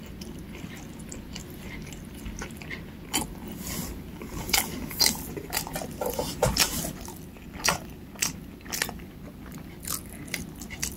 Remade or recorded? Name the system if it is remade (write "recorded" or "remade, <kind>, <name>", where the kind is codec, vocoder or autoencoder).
recorded